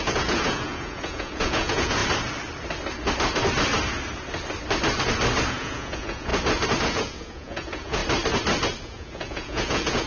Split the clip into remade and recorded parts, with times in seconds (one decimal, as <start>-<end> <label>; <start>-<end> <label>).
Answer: 0.0-2.0 remade; 2.0-5.5 recorded; 5.5-6.3 remade; 6.3-6.8 recorded; 6.8-8.0 remade; 8.0-8.8 recorded; 8.8-10.1 remade